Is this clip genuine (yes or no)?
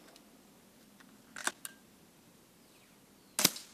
yes